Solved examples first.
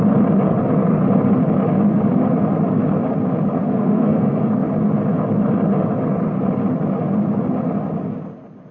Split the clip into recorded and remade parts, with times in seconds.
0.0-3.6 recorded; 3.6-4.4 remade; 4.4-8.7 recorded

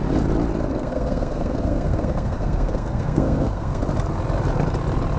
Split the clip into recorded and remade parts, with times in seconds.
0.0-0.7 recorded; 0.7-3.8 remade; 3.8-5.2 recorded

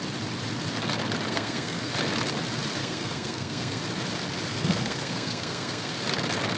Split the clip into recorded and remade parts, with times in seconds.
0.0-1.3 recorded; 1.3-1.9 remade; 1.9-2.8 recorded; 2.8-3.8 remade; 3.8-4.5 recorded; 4.5-5.9 remade; 5.9-6.6 recorded

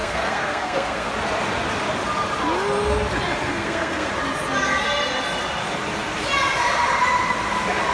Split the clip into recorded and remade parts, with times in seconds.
0.0-1.1 remade; 1.1-3.4 recorded; 3.4-4.1 remade; 4.1-7.9 recorded

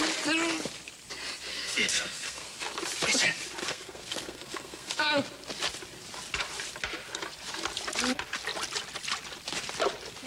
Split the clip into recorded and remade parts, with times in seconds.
0.0-1.5 recorded; 1.5-2.8 remade; 2.8-3.6 recorded; 3.6-5.1 remade; 5.1-10.3 recorded

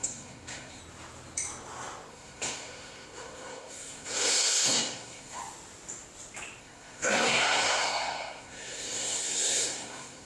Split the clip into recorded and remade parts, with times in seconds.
0.0-0.8 remade; 0.8-2.1 recorded; 2.1-5.4 remade; 5.4-6.6 recorded; 6.6-10.3 remade

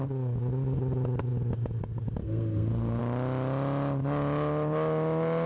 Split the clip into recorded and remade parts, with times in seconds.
0.0-2.2 recorded; 2.2-3.0 remade; 3.0-5.5 recorded

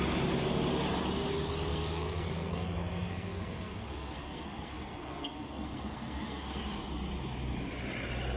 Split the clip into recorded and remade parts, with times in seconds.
0.0-1.7 recorded; 1.7-6.6 remade; 6.6-8.4 recorded